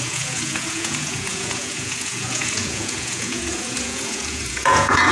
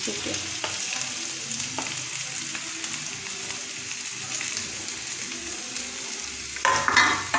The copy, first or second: first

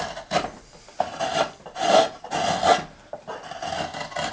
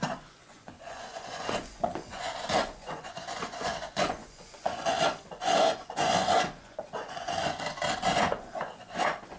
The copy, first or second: second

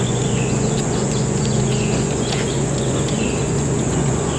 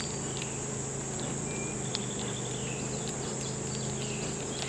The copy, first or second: first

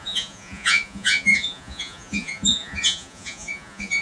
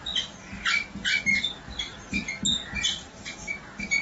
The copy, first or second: first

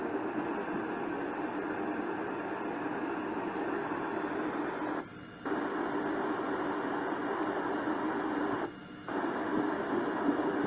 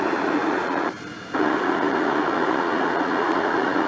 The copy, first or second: second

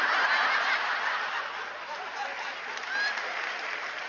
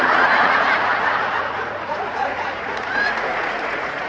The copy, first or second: second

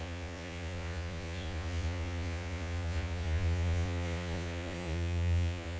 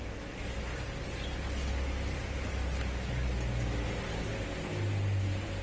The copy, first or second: first